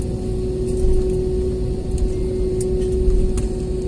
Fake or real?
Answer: real